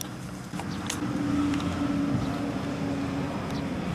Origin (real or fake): real